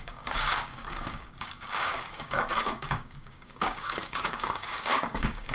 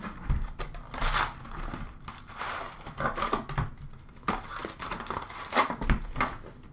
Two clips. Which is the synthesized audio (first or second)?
first